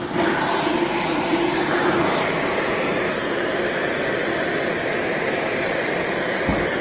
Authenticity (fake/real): fake